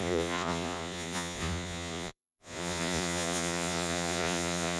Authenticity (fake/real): fake